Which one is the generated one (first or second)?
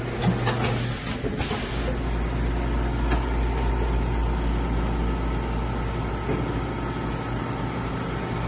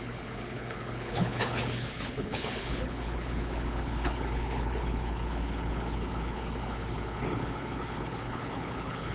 second